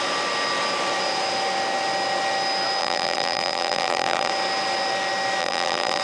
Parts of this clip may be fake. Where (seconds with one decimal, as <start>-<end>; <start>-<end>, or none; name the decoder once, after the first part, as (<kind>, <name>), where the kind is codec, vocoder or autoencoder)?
2.8-4.3 (vocoder, BigVGAN v2); 5.4-6.0